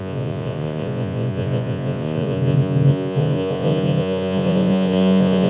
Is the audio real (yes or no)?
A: no